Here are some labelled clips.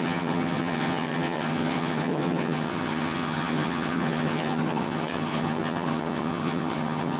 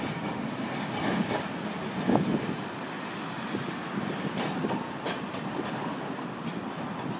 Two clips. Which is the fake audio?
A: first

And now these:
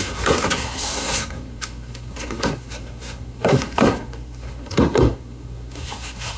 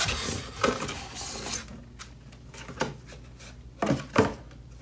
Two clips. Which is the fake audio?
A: first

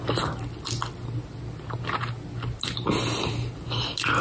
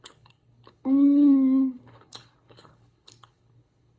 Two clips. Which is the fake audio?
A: second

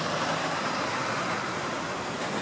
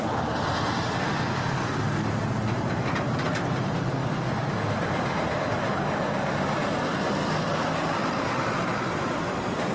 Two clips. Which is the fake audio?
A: first